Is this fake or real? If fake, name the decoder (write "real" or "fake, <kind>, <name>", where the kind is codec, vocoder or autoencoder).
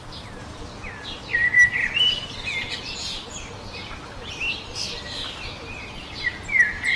real